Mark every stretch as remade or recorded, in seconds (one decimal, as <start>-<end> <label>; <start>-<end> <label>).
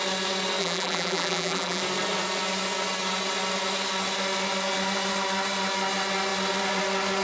0.0-0.6 recorded; 0.6-1.8 remade; 1.8-7.2 recorded